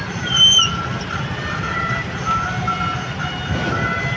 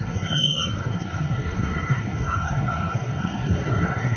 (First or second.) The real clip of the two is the first